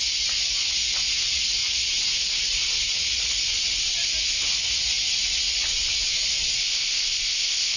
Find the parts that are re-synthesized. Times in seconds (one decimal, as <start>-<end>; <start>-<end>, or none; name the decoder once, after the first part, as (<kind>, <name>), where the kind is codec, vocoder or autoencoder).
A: 6.6-7.8 (codec, ZipCodec)